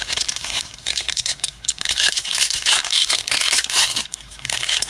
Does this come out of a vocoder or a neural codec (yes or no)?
yes